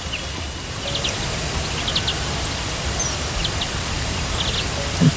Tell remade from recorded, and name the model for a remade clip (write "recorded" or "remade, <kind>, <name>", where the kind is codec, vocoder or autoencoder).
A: recorded